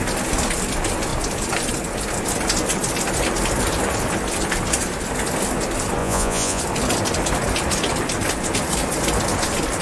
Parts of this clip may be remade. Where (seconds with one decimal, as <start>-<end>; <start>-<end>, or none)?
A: 6.0-6.6